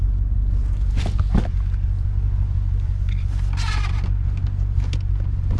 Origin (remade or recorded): recorded